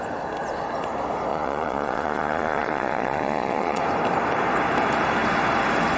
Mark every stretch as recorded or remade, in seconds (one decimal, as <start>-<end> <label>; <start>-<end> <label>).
0.0-1.3 recorded; 1.3-3.8 remade; 3.8-6.0 recorded